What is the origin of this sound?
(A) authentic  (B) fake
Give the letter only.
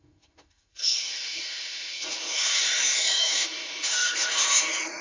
B